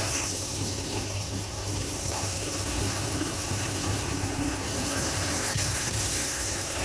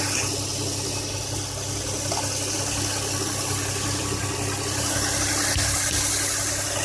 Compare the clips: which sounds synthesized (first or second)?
first